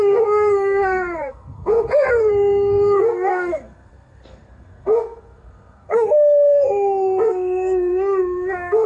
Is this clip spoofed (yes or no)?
yes